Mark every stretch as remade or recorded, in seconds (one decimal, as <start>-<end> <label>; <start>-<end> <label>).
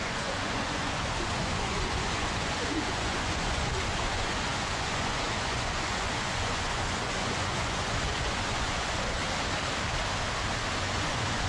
0.0-9.2 remade; 9.2-10.8 recorded; 10.8-11.5 remade